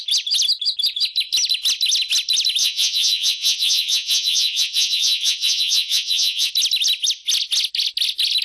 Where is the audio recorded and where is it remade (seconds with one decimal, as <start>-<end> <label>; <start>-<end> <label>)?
0.0-2.6 recorded; 2.6-6.5 remade; 6.5-8.4 recorded